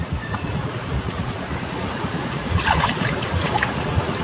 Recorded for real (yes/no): no